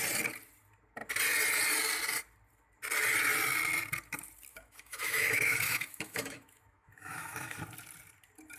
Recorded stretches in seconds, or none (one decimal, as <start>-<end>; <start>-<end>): 0.0-4.5; 7.6-8.6